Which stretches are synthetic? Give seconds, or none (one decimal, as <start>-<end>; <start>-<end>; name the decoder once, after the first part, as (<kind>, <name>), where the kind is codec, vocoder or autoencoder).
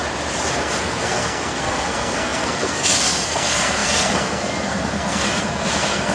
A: 0.5-6.1 (codec, SNAC)